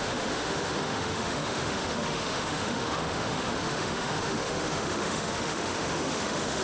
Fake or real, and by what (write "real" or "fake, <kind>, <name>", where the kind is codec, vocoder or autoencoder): fake, autoencoder, DAC-VAE